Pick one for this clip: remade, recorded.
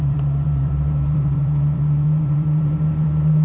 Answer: remade